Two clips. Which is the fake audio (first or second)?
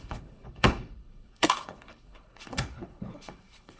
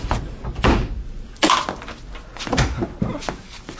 first